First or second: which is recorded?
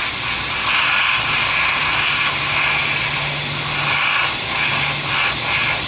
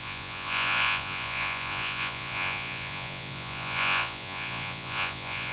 first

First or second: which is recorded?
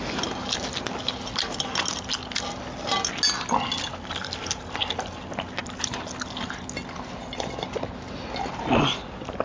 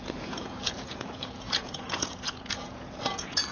first